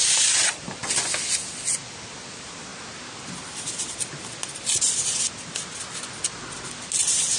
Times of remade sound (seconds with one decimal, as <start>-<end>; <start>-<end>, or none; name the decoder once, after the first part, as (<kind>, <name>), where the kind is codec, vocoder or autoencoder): 0.0-0.8 (vocoder, BigVGAN v2); 2.3-2.7